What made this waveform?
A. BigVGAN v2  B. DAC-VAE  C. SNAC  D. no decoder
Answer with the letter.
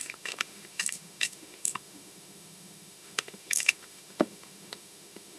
B